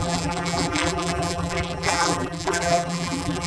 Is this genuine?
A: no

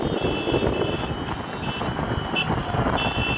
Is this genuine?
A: yes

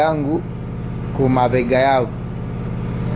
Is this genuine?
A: yes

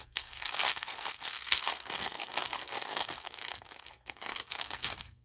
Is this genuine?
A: no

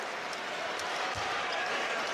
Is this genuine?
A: no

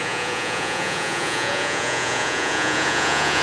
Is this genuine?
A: no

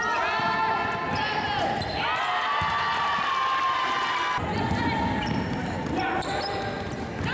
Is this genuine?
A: yes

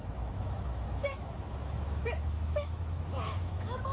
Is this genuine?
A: no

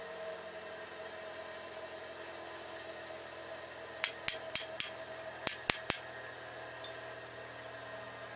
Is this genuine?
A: yes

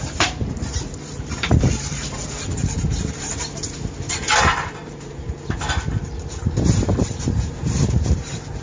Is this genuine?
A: no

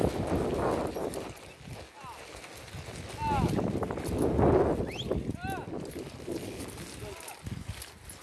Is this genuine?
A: yes